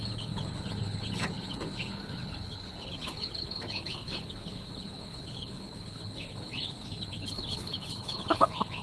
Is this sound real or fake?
fake